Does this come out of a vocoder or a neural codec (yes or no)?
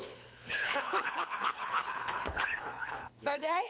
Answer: yes